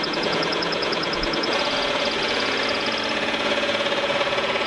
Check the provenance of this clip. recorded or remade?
remade